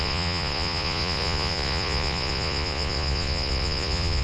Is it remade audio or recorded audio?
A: remade